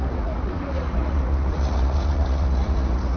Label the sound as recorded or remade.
remade